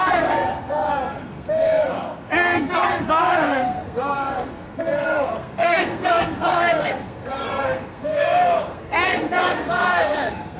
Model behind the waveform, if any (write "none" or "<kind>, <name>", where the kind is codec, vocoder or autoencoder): codec, SNAC